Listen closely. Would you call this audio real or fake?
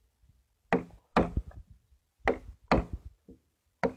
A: real